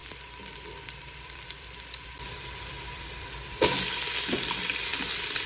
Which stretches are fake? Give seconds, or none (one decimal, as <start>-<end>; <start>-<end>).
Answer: 0.0-3.3